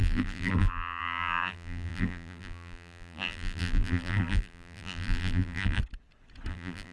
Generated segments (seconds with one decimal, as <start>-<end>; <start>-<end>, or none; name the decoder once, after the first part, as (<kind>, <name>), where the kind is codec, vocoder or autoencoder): 0.0-5.8 (vocoder, BigVGAN v2); 6.5-6.9